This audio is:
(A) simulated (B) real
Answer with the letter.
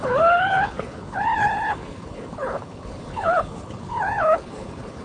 A